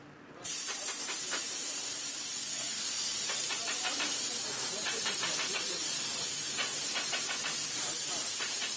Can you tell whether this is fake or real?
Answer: fake